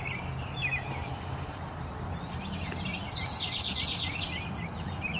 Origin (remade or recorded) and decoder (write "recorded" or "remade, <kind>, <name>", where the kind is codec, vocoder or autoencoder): recorded